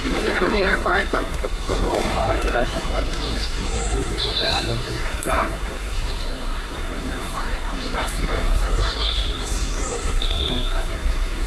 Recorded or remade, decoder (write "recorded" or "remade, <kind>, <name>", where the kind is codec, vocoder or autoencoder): remade, codec, SNAC